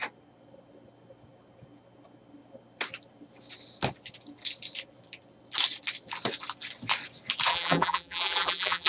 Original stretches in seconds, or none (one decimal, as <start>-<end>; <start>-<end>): 0.0-7.5